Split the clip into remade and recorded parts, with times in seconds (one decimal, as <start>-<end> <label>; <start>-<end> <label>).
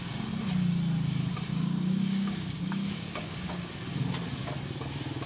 0.0-1.5 recorded; 1.5-3.8 remade; 3.8-5.3 recorded